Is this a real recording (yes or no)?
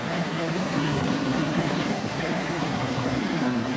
no